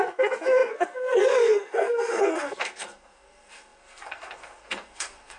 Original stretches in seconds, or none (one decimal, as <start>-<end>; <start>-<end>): none